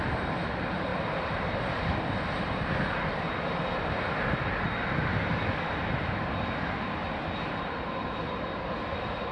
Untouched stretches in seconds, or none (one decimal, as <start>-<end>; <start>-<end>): 0.0-9.3